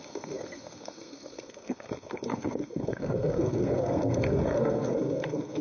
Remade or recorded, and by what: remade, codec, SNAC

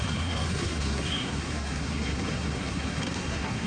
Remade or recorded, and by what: remade, codec, SNAC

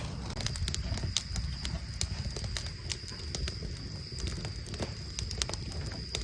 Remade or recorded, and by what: recorded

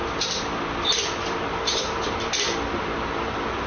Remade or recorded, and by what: recorded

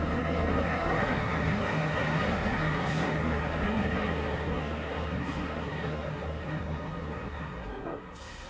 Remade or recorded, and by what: remade, codec, SNAC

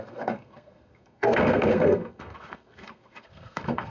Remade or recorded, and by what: remade, codec, SNAC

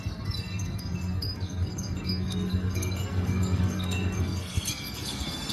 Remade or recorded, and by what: remade, codec, SNAC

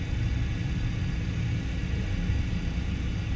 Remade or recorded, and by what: recorded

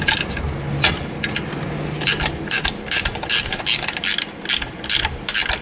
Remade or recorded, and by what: recorded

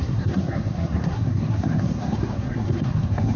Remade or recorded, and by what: remade, codec, SNAC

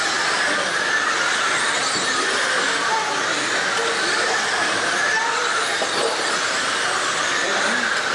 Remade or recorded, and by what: recorded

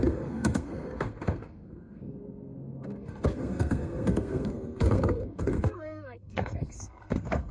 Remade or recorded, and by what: remade, codec, SNAC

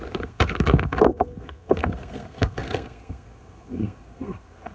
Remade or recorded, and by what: remade, codec, SNAC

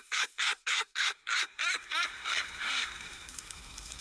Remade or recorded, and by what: remade, codec, SNAC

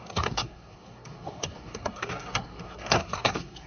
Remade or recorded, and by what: remade, codec, SNAC